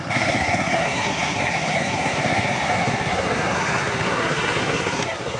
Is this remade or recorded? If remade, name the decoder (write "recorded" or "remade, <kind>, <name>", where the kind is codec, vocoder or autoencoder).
remade, codec, SNAC